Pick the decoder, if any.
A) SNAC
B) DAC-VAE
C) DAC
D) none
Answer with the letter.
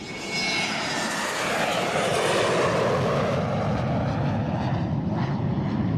D